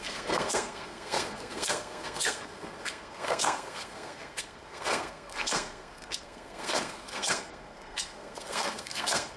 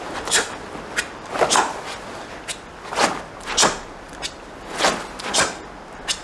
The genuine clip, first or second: second